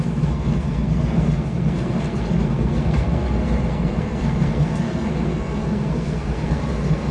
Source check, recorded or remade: remade